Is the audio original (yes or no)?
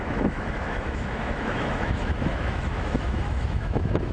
no